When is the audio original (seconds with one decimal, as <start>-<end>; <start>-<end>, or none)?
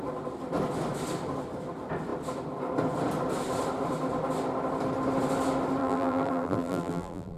0.0-5.8